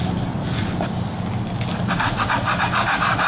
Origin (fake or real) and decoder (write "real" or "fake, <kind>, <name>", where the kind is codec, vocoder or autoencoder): real